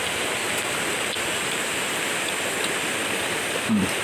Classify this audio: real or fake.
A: real